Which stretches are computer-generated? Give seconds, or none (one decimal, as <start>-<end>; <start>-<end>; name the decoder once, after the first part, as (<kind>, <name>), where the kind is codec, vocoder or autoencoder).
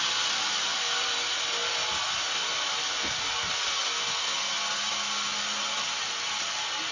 none